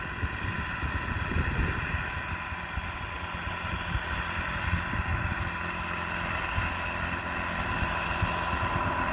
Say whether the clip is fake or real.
real